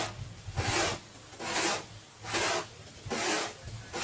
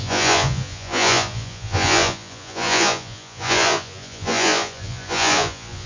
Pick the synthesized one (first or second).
second